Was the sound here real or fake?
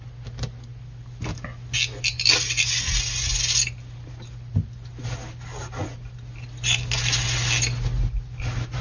real